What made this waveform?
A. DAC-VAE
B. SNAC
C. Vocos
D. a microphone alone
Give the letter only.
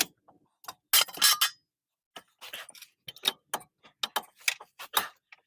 D